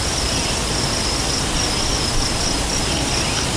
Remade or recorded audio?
recorded